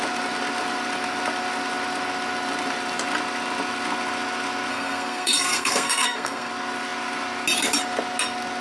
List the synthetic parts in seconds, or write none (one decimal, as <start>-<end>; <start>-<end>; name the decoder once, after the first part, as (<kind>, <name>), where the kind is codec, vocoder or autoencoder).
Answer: 4.7-6.5 (codec, SNAC)